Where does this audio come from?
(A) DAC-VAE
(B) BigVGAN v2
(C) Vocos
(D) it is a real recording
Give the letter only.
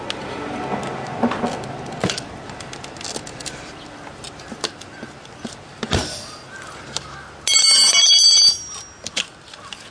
D